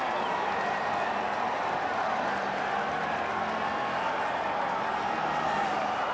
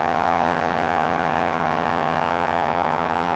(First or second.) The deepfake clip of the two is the second